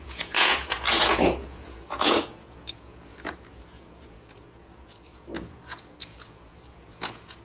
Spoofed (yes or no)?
yes